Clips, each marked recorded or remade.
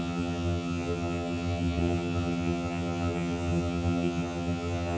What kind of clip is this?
remade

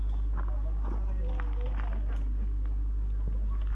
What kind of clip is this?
recorded